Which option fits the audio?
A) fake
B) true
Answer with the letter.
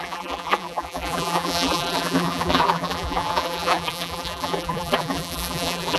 A